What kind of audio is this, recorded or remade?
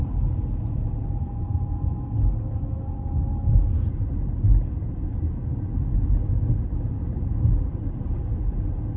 recorded